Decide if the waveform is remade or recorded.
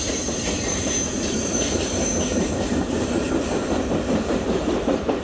remade